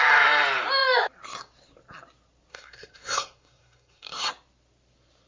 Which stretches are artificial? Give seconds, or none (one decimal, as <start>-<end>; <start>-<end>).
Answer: 2.5-4.3